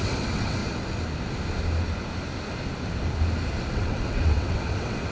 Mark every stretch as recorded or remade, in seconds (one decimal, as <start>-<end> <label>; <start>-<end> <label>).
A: 0.0-0.6 remade; 0.6-3.7 recorded; 3.7-5.1 remade